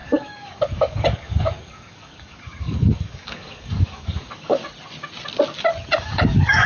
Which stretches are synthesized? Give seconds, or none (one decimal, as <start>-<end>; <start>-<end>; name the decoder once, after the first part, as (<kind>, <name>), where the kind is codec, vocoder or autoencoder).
0.0-4.6 (codec, DAC); 6.0-6.7